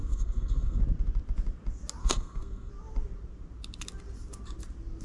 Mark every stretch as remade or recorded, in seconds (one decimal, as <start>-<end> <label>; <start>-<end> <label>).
0.0-0.8 remade; 0.8-2.0 recorded; 2.0-2.7 remade; 2.7-5.0 recorded